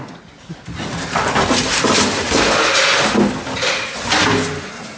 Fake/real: real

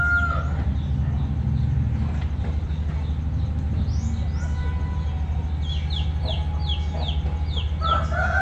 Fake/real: real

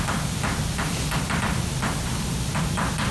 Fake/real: real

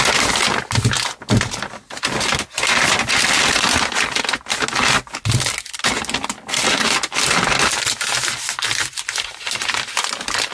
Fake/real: real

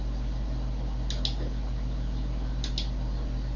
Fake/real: real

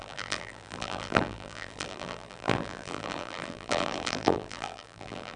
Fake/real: fake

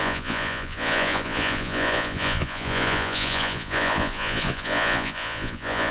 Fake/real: fake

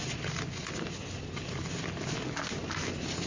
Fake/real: real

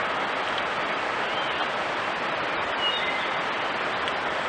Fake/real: real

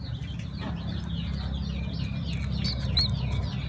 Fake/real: real